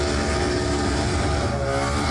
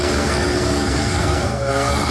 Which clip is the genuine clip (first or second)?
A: first